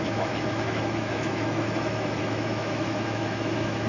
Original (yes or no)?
no